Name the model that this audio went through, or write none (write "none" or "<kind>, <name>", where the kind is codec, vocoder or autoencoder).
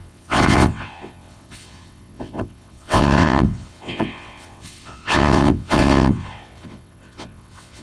vocoder, WaveNeXt